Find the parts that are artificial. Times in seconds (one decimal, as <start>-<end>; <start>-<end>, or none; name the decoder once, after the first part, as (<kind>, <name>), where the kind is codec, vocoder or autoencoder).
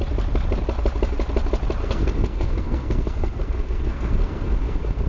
1.8-5.1 (codec, SNAC)